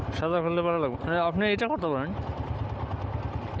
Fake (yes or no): no